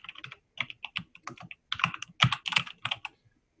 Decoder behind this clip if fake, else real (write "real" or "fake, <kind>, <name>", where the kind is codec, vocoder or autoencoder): real